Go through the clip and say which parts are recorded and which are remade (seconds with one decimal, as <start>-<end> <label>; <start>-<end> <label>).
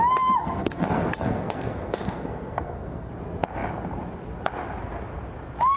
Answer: 0.0-0.4 recorded; 0.4-3.1 remade; 3.1-5.8 recorded